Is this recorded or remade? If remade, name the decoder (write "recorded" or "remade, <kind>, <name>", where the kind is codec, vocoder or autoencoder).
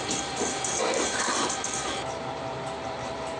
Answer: remade, vocoder, BigVGAN v2